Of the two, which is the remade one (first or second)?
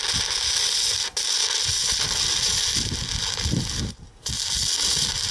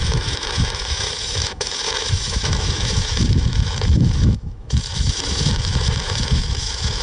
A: second